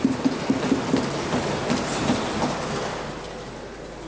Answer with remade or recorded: recorded